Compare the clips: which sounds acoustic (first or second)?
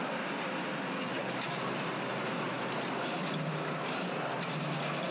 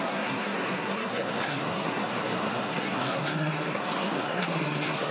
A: first